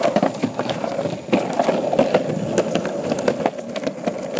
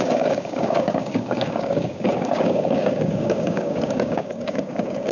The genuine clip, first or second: first